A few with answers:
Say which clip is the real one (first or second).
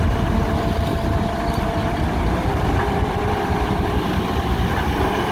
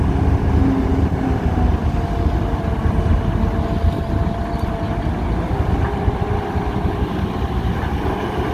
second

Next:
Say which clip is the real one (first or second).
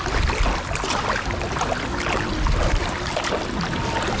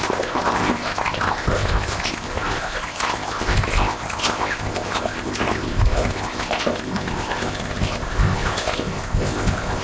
first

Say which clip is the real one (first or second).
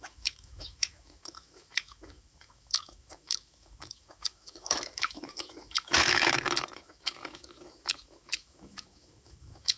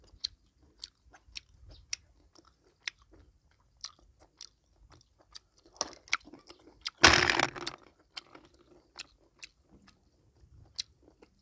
second